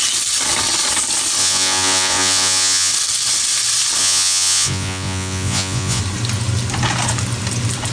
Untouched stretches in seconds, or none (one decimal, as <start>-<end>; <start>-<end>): 0.0-1.4; 2.9-4.0; 6.0-7.9

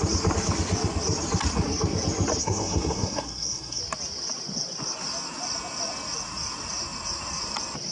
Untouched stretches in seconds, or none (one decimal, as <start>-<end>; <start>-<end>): 0.0-2.4; 3.8-7.9

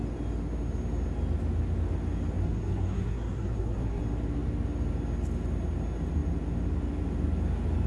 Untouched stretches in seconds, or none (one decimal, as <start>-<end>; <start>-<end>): 0.0-2.4; 4.0-7.9

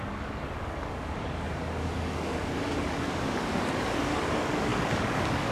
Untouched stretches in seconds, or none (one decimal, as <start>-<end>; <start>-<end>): none

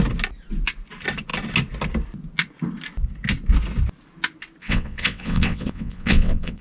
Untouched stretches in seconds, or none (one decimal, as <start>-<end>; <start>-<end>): 0.0-4.6